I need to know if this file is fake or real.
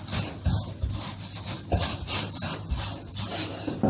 real